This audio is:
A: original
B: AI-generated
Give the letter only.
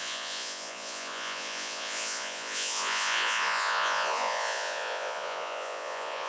B